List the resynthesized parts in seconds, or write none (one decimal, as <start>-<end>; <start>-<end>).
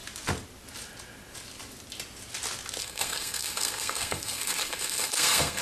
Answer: 2.8-5.6